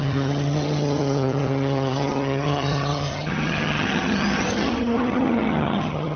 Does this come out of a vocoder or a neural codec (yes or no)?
yes